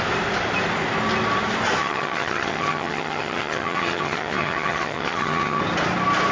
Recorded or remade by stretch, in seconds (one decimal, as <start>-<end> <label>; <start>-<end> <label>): 0.0-1.8 recorded; 1.8-5.6 remade; 5.6-6.3 recorded